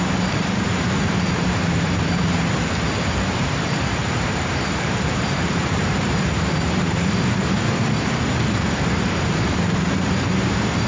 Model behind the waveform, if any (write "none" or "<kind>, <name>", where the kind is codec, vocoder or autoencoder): vocoder, BigVGAN v2